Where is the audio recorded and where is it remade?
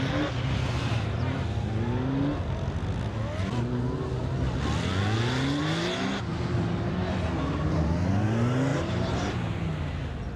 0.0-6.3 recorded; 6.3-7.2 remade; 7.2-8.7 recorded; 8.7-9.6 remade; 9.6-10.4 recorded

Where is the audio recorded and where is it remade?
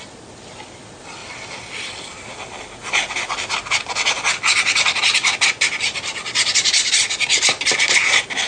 0.0-1.2 recorded; 1.2-1.9 remade; 1.9-8.5 recorded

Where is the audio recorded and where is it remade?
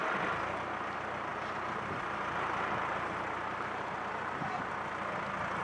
0.0-1.3 recorded; 1.3-4.7 remade; 4.7-5.6 recorded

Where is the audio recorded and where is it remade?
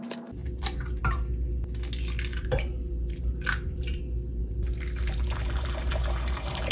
0.0-0.4 recorded; 0.4-1.0 remade; 1.0-2.3 recorded; 2.3-4.0 remade; 4.0-4.4 recorded; 4.4-6.7 remade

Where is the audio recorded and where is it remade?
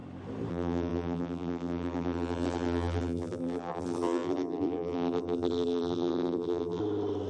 0.0-0.5 recorded; 0.5-6.8 remade; 6.8-7.3 recorded